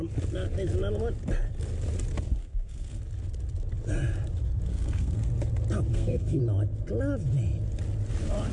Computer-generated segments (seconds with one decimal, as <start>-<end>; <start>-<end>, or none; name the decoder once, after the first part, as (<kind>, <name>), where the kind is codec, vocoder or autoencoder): 2.4-3.0 (codec, SNAC); 4.7-5.3; 5.9-6.4